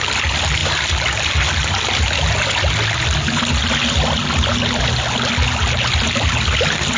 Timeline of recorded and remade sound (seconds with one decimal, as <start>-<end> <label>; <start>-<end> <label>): 0.0-7.0 recorded